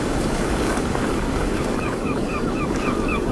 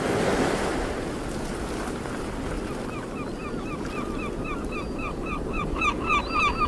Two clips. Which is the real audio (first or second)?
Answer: second